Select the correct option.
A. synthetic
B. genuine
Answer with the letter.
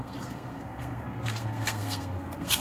A